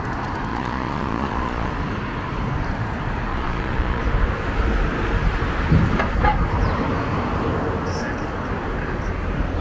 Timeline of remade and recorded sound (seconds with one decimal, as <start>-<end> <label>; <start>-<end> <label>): 0.0-0.5 recorded; 0.5-1.7 remade; 1.7-3.3 recorded; 3.3-4.0 remade; 4.0-9.6 recorded